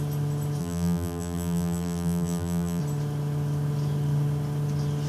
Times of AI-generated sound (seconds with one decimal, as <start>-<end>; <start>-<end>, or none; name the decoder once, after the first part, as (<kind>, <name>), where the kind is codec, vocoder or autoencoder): 0.6-2.8 (vocoder, BigVGAN v2)